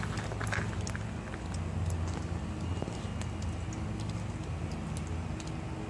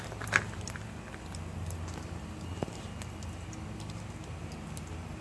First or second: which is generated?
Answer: second